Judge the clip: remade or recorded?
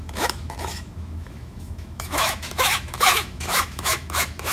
remade